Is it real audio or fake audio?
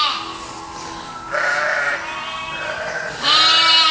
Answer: real